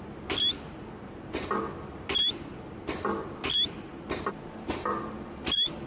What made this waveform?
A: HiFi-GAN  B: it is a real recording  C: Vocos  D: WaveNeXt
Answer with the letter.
B